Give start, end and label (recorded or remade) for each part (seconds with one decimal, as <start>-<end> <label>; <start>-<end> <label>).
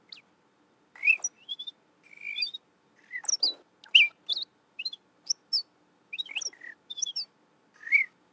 0.0-8.3 recorded